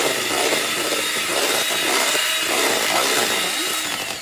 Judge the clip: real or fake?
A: real